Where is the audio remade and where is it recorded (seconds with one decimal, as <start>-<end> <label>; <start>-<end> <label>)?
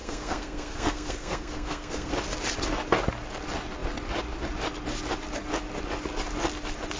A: 0.0-2.1 remade; 2.1-7.0 recorded